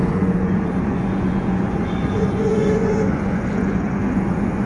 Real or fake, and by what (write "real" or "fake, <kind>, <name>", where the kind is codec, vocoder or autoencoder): fake, vocoder, Vocos